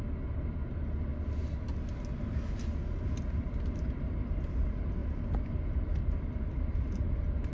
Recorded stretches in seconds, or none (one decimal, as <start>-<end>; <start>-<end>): 0.0-5.0